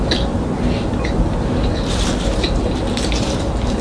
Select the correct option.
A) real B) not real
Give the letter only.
A